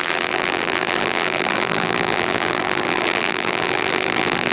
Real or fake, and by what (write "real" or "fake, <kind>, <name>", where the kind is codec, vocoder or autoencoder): fake, vocoder, BigVGAN v2